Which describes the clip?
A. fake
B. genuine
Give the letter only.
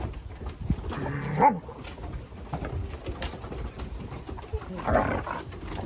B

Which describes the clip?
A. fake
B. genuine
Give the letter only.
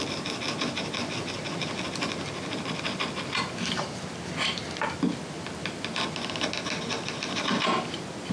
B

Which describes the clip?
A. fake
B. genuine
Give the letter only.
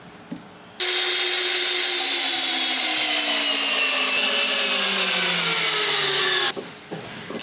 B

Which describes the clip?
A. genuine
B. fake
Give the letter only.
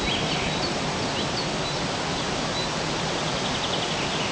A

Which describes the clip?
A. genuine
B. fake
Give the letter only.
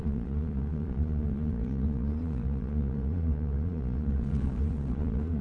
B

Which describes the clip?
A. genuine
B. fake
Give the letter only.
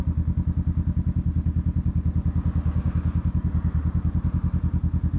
A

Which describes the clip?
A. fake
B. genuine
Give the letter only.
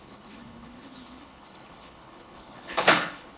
A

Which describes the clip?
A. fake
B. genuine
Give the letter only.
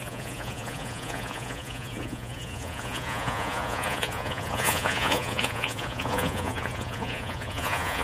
A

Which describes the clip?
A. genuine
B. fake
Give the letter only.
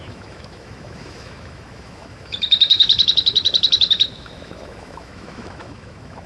B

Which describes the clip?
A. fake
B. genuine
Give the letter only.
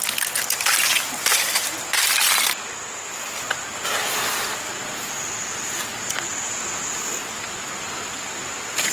B